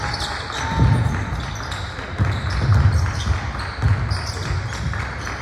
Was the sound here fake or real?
real